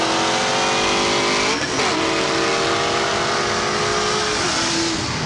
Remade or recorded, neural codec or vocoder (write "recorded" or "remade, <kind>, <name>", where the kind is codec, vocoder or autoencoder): recorded